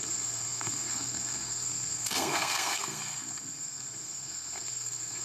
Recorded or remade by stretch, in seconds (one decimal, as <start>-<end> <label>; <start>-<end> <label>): 0.0-5.2 remade